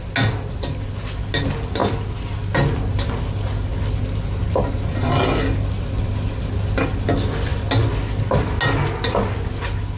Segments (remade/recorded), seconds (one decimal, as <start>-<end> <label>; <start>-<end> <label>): 0.0-10.0 recorded